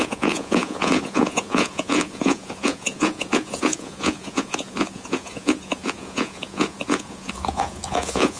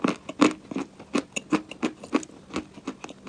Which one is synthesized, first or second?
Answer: first